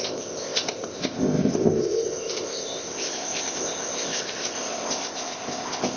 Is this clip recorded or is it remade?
remade